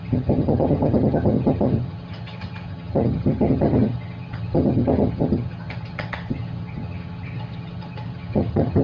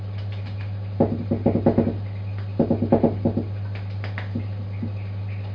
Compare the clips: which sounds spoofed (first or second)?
first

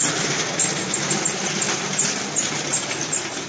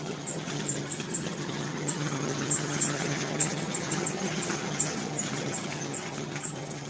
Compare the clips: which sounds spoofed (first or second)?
second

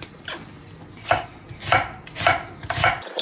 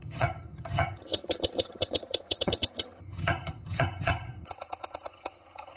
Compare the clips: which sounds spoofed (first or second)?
second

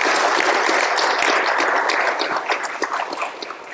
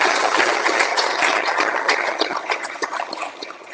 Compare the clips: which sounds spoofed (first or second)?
second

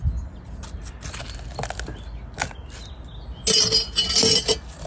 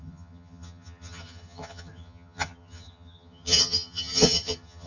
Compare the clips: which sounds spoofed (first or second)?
second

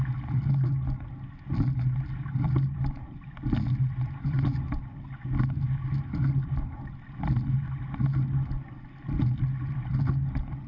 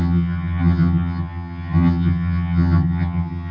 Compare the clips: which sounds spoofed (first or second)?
second